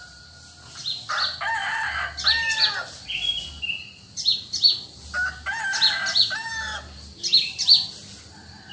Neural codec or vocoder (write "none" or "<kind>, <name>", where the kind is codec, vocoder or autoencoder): none